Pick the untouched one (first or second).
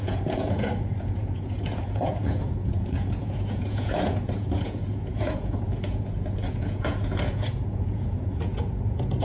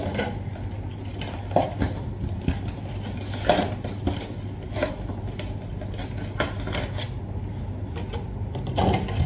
second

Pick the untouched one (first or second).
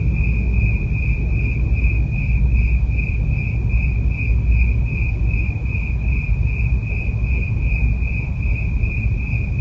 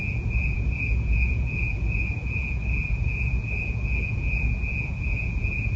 first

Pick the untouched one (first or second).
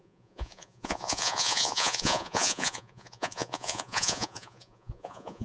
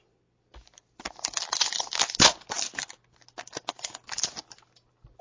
second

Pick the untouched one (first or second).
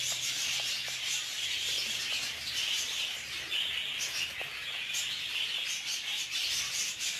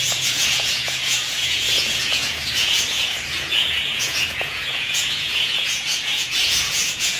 first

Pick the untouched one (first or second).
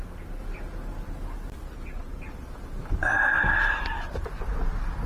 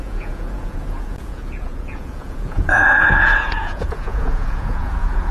first